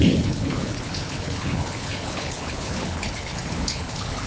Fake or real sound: fake